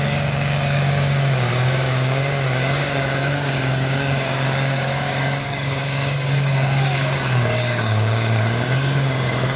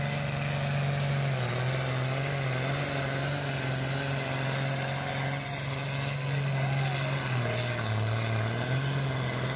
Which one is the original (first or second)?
second